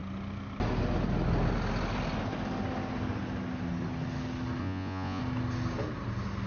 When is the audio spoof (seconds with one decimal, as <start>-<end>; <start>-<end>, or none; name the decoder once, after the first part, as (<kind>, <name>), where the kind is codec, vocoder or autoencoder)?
4.6-5.2 (vocoder, Vocos)